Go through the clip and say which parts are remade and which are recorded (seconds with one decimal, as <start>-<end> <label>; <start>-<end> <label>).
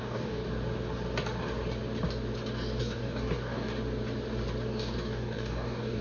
0.0-0.4 remade; 0.4-2.8 recorded; 2.8-3.7 remade; 3.7-4.7 recorded; 4.7-6.0 remade